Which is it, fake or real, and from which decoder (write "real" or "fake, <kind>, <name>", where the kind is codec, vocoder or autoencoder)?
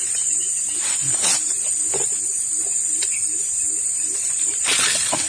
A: real